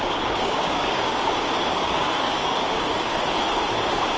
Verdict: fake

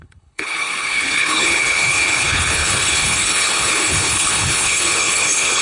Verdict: fake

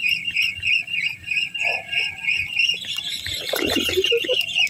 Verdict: fake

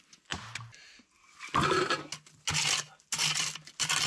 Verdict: real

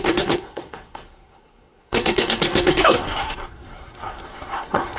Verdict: fake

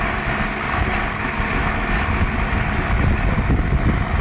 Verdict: real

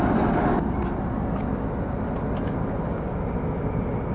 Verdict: real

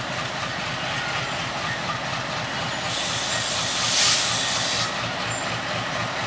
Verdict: real